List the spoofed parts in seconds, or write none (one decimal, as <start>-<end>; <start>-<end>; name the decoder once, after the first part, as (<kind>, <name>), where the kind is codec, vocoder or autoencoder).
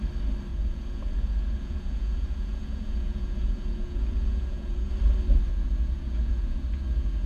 0.5-4.9 (vocoder, Vocos); 5.5-7.3